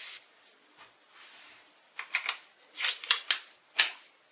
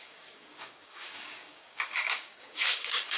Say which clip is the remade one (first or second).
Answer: second